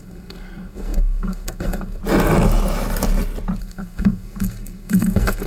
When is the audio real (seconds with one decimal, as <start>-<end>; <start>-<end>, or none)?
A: 2.0-3.6